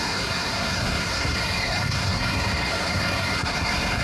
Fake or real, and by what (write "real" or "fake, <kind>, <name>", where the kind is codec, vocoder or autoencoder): fake, codec, SNAC